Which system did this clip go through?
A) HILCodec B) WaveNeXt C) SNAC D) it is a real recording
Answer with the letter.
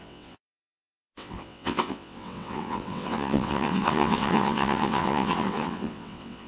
B